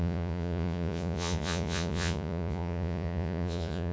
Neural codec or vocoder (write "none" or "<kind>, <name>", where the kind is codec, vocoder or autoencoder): vocoder, Vocos